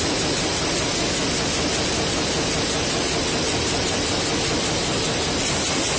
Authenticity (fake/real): real